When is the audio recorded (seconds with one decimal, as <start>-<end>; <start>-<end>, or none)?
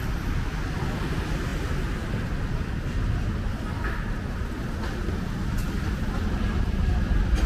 0.0-5.6